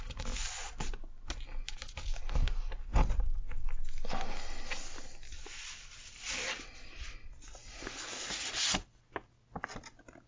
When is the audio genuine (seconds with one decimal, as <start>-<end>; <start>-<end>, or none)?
0.0-2.9; 3.4-10.3